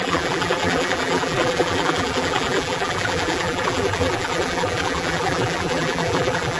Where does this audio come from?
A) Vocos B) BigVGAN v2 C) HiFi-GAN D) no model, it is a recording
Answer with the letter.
B